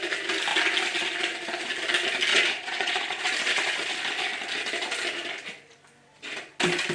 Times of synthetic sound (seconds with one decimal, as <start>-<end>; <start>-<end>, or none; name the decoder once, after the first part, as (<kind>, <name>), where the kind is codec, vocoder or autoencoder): 2.3-3.2 (vocoder, Vocos)